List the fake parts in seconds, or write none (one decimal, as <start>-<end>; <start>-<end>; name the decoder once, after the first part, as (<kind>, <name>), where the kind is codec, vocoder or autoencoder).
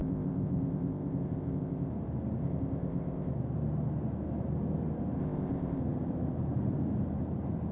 0.0-1.9 (codec, ZipCodec); 2.4-3.3; 5.2-5.8